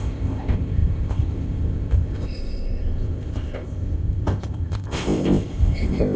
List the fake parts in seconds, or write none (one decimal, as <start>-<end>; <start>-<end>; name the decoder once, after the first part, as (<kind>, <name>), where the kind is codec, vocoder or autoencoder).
0.0-6.2 (codec, ZipCodec)